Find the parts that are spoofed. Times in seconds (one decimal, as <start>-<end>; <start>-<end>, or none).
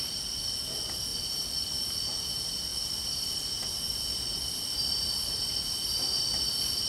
1.1-1.8; 2.7-6.9